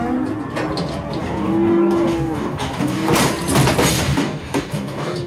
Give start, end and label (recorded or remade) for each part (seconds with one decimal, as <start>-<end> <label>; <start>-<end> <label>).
0.0-1.2 recorded; 1.2-3.1 remade; 3.1-3.9 recorded; 3.9-5.3 remade